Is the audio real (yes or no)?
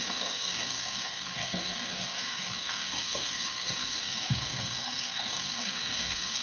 no